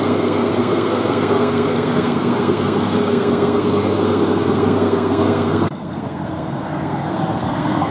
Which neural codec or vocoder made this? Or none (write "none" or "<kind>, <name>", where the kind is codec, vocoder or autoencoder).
codec, SNAC